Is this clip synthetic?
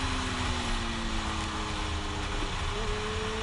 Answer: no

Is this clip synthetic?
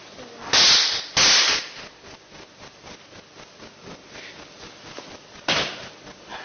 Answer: no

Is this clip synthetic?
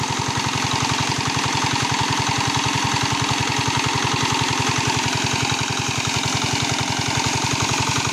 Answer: no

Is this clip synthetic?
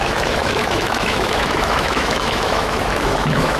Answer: yes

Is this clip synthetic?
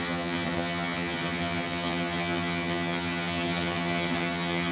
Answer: yes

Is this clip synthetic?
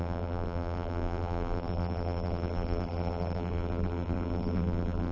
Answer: yes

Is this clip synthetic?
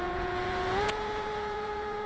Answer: yes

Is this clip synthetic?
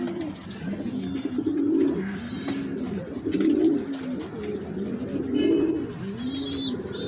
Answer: no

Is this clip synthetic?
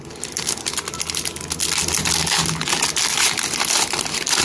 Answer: no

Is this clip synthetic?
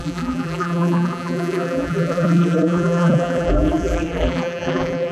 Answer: yes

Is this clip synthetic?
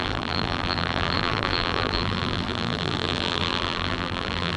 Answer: yes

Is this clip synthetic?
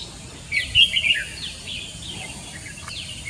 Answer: no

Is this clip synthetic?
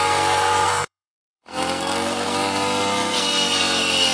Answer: yes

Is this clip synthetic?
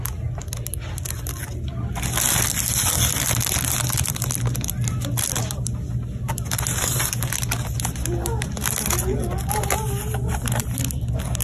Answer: no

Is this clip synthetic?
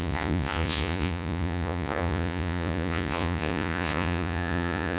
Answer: yes